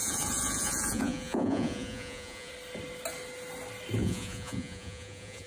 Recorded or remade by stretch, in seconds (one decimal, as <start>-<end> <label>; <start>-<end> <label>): 0.0-2.5 remade; 2.5-4.0 recorded; 4.0-5.5 remade